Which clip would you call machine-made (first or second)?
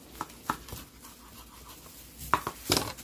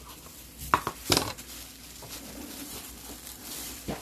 second